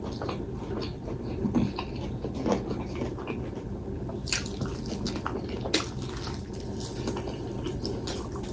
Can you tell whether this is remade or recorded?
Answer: recorded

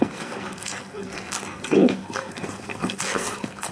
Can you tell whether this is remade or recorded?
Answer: remade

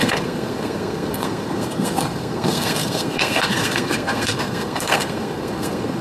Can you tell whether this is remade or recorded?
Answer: remade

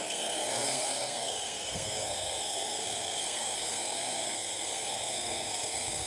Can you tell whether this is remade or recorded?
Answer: remade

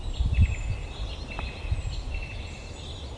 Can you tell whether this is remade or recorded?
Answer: recorded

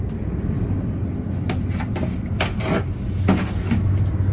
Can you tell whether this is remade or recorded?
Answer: recorded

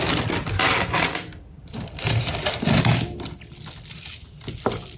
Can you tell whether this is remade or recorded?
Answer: recorded